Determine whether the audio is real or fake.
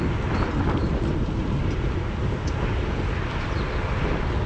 real